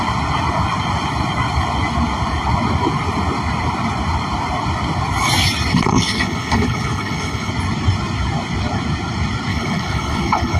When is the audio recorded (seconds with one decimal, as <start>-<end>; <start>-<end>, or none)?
0.0-5.7; 7.5-9.5